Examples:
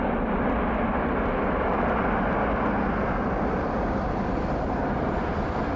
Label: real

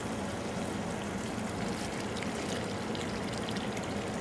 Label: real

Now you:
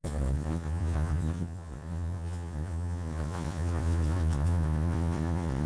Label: fake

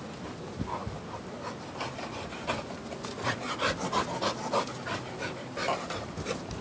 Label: real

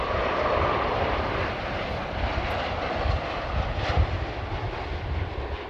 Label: real